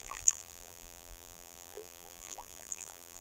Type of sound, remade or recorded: remade